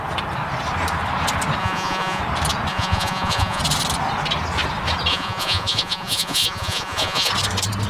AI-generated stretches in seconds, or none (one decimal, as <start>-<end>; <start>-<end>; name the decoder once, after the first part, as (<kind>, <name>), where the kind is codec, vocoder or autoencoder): 1.6-2.2 (vocoder, Vocos); 2.7-3.6; 5.1-7.3